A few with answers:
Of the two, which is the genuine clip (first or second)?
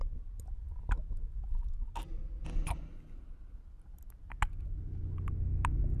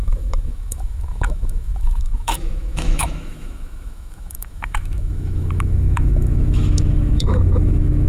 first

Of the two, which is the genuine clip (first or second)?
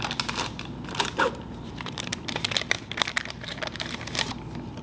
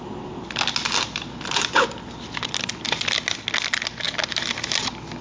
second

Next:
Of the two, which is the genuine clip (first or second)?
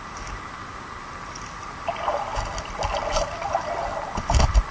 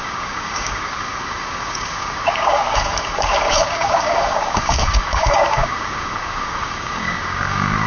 first